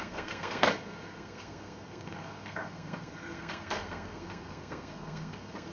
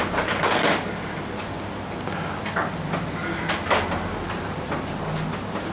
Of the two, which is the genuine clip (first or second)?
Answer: second